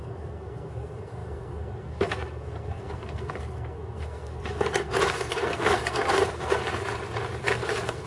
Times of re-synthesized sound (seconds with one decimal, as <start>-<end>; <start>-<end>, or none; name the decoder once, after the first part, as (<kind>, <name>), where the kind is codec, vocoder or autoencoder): 0.0-6.6 (codec, SNAC); 7.4-8.1